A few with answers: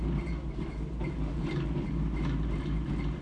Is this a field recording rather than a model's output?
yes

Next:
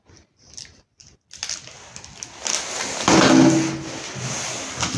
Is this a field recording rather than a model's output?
yes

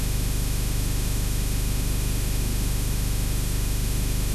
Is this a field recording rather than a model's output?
no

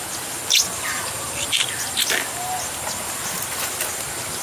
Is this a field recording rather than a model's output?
yes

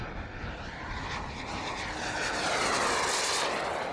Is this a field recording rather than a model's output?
yes